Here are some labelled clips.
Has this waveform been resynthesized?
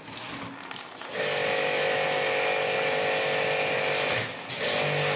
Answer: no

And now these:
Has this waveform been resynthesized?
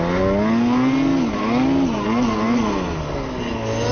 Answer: no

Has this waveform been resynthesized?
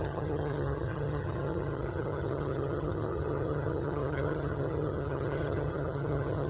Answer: yes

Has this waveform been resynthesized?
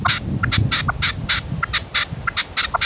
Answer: no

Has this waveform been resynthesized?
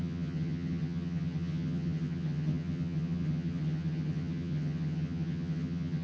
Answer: yes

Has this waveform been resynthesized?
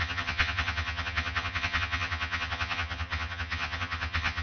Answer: yes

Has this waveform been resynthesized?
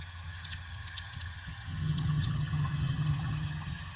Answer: yes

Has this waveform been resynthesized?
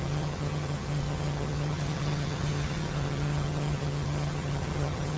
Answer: yes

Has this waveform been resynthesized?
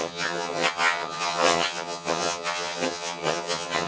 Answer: yes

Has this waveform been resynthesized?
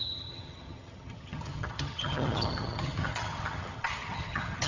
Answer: yes